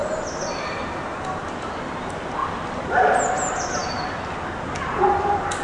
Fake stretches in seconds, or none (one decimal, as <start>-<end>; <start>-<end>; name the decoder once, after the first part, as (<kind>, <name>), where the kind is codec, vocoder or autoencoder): none